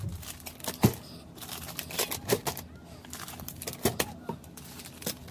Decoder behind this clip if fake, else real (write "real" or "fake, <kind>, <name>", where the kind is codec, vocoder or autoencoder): real